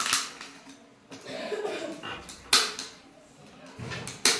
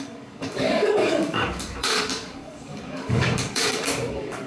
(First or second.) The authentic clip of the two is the first